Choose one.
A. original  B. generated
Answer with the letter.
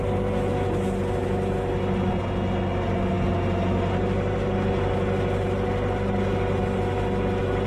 A